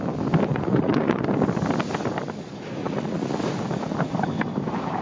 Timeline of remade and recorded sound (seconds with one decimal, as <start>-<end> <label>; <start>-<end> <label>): 0.0-0.5 recorded; 0.5-1.2 remade; 1.2-2.8 recorded; 2.8-3.4 remade; 3.4-5.0 recorded